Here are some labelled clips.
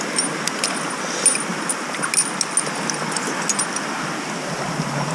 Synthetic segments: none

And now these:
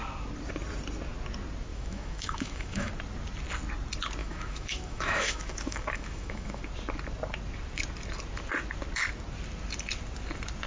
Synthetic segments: 1.7-2.9 (autoencoder, DAC-VAE); 4.2-6.6

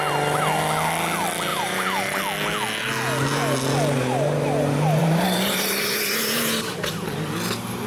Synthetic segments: 1.5-2.2 (vocoder, BigVGAN v2); 5.0-5.9

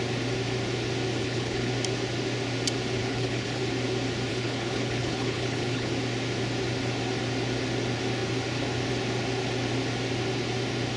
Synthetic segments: 1.2-1.7 (codec, HILCodec); 3.0-3.6; 4.3-5.9

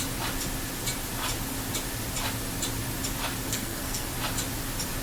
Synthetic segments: 3.5-4.1 (codec, SNAC)

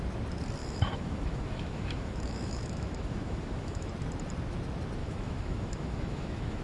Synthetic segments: 0.6-3.9 (autoencoder, DAC-VAE); 5.0-6.6

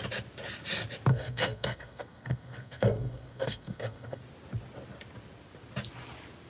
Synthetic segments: 1.1-4.2 (codec, SNAC)

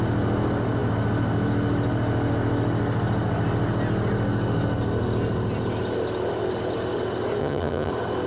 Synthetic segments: 7.4-7.9 (vocoder, HiFi-GAN)